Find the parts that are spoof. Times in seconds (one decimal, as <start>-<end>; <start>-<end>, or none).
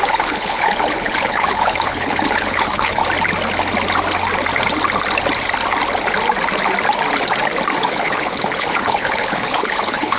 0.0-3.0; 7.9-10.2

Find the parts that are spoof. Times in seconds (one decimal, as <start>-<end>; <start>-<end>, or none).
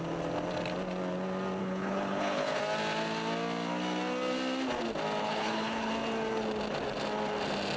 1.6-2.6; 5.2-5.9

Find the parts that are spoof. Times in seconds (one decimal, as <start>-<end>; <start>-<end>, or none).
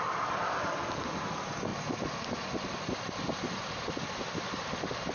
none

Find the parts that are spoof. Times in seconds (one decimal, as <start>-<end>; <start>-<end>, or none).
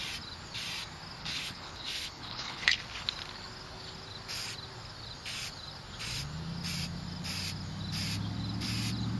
1.2-2.8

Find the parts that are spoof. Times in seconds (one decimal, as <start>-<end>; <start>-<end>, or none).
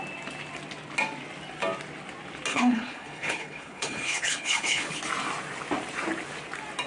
2.5-5.0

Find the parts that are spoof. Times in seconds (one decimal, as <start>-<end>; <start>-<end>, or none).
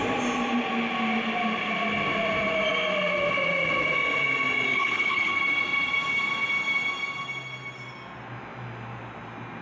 4.7-5.3